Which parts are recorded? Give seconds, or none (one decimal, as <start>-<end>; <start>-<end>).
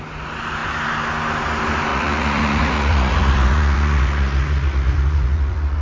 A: 0.0-1.9